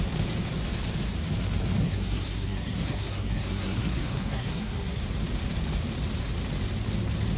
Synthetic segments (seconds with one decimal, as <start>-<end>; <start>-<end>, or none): 1.8-5.0